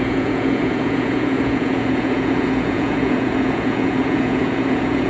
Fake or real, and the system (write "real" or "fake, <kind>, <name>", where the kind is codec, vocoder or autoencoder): fake, vocoder, Vocos